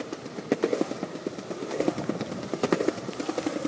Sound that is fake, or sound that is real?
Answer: real